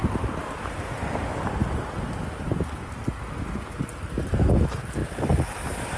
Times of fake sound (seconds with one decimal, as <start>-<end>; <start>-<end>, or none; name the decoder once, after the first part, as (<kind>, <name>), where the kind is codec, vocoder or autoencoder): none